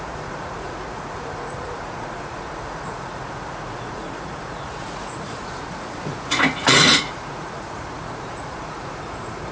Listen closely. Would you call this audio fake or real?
fake